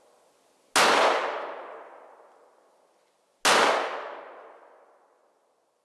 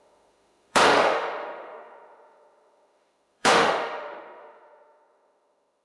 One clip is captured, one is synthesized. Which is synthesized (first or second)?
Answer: second